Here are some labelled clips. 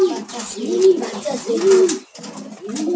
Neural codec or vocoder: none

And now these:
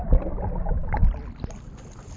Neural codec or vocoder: none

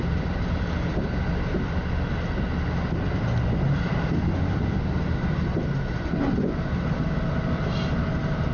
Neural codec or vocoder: none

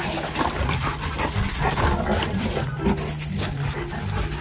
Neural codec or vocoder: none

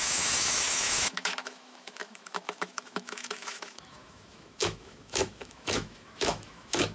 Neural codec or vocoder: autoencoder, DAC-VAE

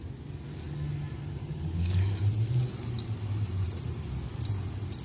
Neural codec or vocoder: none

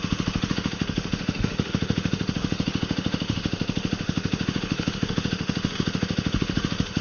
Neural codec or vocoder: autoencoder, DAC-VAE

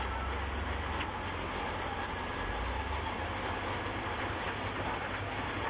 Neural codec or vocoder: none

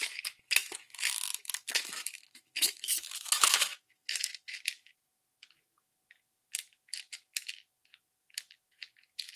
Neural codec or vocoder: autoencoder, DAC-VAE